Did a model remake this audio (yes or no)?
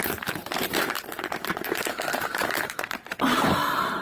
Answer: yes